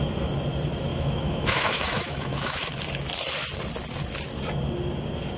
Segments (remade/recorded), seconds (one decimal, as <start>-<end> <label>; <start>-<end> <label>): 0.0-0.9 recorded; 0.9-2.7 remade; 2.7-5.4 recorded